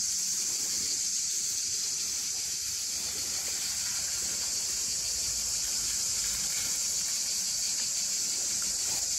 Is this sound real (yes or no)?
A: no